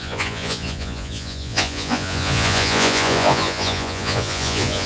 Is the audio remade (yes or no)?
yes